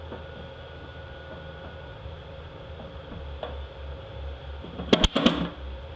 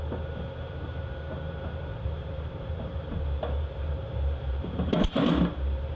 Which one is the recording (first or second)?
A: first